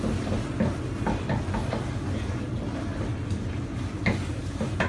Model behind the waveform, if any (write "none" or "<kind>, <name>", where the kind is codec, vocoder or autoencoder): none